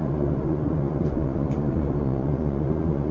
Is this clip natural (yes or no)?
no